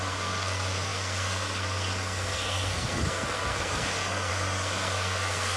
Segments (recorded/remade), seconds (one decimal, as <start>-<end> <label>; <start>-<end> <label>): 0.0-5.6 remade